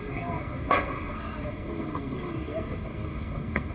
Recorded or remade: remade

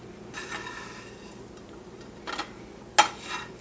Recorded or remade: recorded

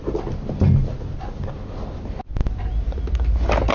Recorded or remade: recorded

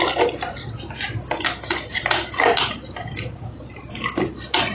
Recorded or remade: recorded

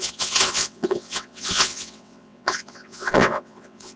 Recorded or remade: remade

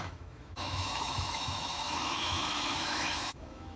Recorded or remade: remade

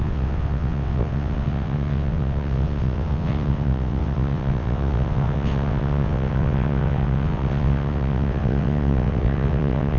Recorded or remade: remade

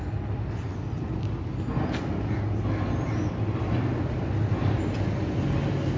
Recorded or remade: recorded